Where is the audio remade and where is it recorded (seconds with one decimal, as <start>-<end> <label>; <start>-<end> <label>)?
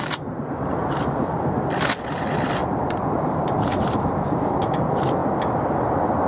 0.0-0.9 remade; 0.9-2.6 recorded; 2.6-4.4 remade; 4.4-6.3 recorded